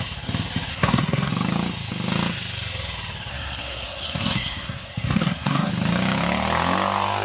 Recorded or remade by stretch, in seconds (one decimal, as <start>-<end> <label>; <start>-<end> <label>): 0.0-0.7 recorded; 0.7-1.3 remade; 1.3-3.3 recorded; 3.3-5.7 remade; 5.7-7.2 recorded